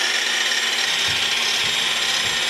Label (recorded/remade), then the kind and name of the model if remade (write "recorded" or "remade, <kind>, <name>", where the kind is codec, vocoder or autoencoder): recorded